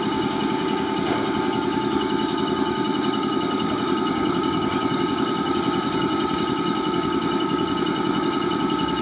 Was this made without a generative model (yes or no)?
no